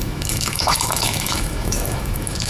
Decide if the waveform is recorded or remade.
remade